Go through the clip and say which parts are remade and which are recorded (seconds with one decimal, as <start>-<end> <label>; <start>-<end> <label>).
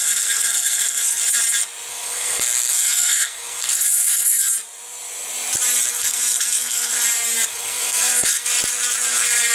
0.0-1.2 remade; 1.2-1.9 recorded; 1.9-4.5 remade; 4.5-5.9 recorded; 5.9-6.9 remade; 6.9-7.5 recorded; 7.5-8.5 remade; 8.5-9.5 recorded